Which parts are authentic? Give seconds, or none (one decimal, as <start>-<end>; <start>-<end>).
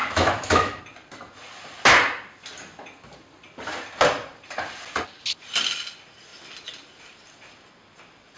0.8-8.4